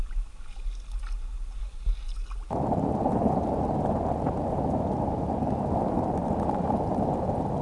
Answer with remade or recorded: recorded